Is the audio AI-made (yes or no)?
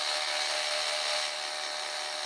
no